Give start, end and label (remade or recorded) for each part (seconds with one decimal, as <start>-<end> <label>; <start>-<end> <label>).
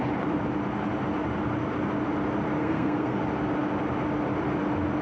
0.0-2.6 recorded; 2.6-3.2 remade; 3.2-5.0 recorded